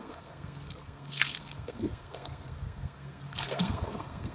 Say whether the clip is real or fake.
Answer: fake